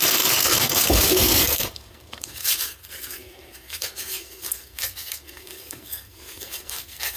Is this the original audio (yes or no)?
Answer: no